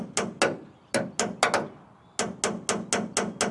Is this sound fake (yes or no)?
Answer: no